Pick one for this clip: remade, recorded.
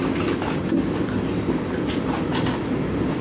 recorded